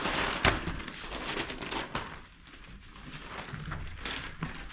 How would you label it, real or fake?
real